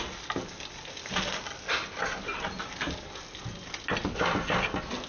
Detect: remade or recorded recorded